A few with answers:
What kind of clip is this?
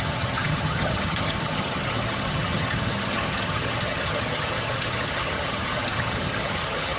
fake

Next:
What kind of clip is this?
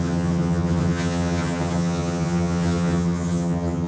fake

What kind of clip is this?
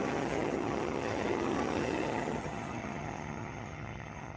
fake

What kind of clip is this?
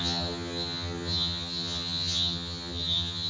fake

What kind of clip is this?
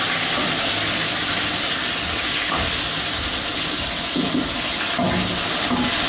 real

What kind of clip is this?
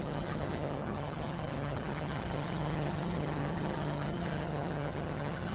fake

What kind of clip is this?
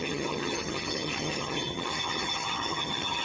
fake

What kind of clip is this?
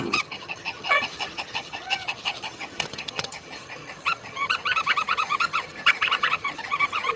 fake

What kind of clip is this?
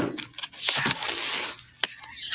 real